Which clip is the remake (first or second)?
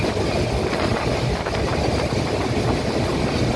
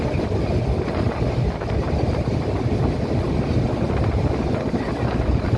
second